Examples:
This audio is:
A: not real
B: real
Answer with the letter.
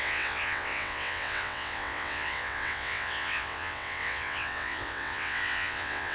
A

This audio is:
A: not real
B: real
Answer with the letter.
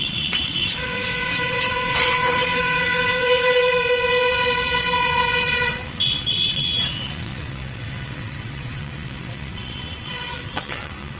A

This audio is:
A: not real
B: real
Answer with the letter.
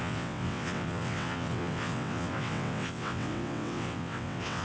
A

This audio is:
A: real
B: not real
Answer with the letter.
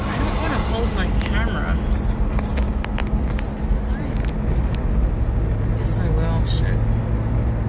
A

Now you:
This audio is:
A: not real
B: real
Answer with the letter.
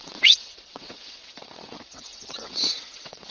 A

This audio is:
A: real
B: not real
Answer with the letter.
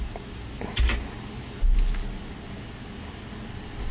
A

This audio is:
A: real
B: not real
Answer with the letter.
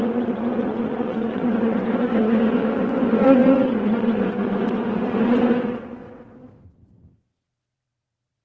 B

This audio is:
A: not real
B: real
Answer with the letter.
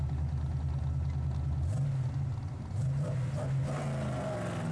B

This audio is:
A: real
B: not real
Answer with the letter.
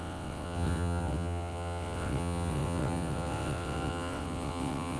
B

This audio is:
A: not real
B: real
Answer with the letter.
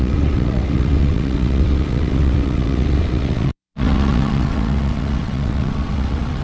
A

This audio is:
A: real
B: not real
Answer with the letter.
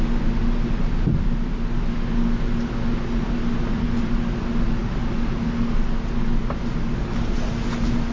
A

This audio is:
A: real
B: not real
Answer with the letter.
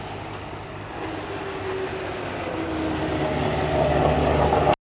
A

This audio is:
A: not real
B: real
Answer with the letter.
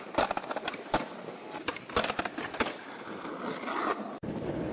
B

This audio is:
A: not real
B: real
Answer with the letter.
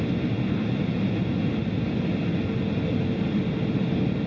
B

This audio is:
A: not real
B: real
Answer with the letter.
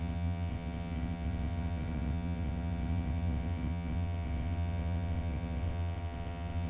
A